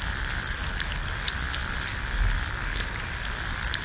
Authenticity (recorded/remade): recorded